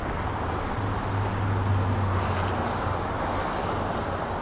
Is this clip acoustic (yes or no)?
yes